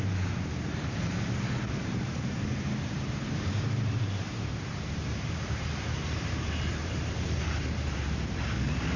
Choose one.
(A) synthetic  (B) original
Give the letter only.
A